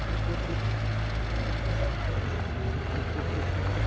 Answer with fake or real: real